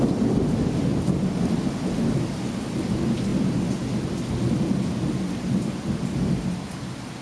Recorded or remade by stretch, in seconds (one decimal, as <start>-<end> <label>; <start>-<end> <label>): 0.0-7.2 recorded